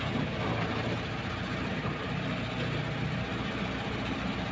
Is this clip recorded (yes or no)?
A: yes